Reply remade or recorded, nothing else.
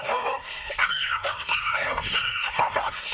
remade